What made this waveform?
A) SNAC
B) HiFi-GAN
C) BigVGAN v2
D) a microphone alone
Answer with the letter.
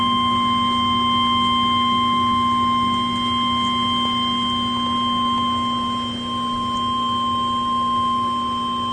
D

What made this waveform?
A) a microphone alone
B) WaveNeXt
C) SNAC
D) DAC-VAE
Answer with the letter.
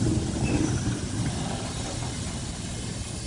A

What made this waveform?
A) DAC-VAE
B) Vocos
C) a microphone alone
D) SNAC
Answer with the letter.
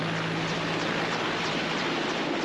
C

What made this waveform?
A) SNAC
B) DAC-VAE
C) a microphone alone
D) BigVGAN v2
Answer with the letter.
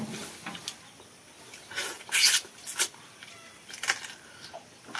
C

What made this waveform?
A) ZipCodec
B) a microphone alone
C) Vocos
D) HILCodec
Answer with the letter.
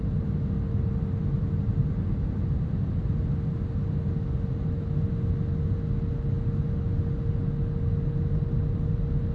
B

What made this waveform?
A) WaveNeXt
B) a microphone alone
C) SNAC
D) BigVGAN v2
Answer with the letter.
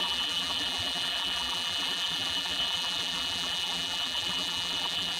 D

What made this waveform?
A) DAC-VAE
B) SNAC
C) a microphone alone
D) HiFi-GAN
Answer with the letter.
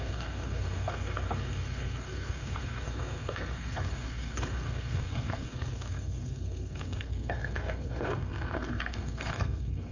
B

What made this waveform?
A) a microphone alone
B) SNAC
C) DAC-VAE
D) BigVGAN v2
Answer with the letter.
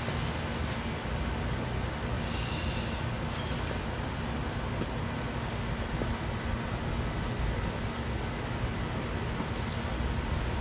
A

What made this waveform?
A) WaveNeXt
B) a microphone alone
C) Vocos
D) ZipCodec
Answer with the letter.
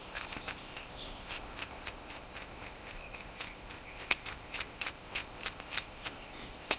D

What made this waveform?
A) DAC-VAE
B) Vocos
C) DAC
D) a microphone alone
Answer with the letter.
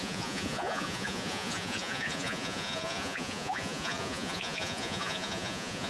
B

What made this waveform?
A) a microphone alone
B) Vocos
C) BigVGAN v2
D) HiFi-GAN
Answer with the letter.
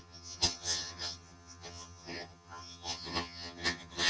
D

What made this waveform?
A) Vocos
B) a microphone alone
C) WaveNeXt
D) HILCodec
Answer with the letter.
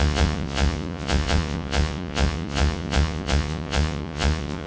A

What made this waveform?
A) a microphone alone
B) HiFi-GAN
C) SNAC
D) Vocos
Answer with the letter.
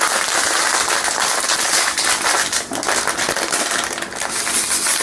A